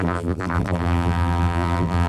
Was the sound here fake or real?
fake